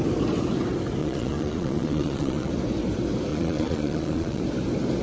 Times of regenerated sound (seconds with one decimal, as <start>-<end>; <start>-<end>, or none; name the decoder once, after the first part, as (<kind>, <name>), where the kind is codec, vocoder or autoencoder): 1.0-2.5 (vocoder, Vocos); 3.3-4.4